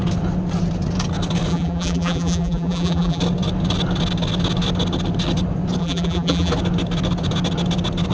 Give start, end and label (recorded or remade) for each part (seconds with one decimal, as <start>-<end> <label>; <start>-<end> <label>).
0.0-1.5 recorded; 1.5-3.2 remade; 3.2-5.8 recorded; 5.8-6.5 remade; 6.5-8.1 recorded